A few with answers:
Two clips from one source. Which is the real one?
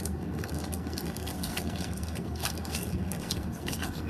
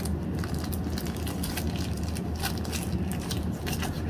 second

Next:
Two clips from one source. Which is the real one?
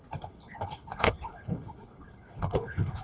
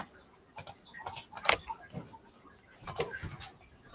second